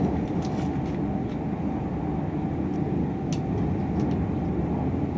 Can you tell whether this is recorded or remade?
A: recorded